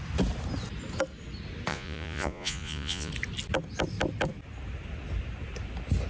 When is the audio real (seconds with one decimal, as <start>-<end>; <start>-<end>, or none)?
0.0-1.7; 3.1-6.1